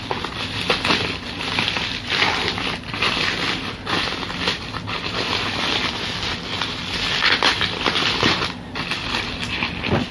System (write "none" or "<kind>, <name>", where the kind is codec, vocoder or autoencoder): vocoder, BigVGAN v2